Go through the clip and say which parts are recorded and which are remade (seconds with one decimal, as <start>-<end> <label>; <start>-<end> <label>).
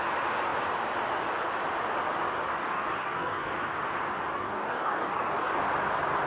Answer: 0.0-2.6 recorded; 2.6-3.5 remade; 3.5-4.3 recorded; 4.3-5.6 remade; 5.6-6.3 recorded